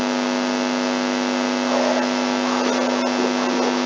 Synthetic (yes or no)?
no